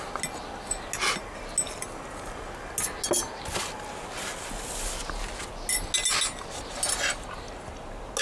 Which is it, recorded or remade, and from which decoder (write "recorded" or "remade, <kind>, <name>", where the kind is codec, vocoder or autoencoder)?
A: recorded